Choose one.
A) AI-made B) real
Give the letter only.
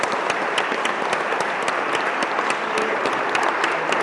B